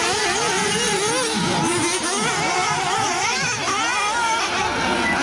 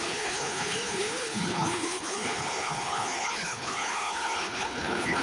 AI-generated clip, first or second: second